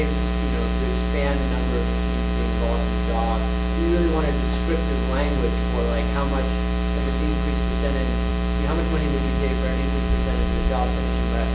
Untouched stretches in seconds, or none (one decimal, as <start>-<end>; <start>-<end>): 0.0-11.5